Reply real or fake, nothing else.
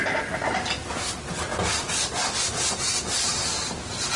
real